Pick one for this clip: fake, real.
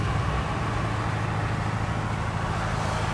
real